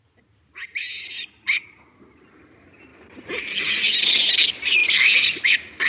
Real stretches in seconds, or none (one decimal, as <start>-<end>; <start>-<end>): 0.0-5.9